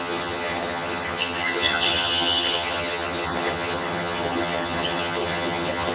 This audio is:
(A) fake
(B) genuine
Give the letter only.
A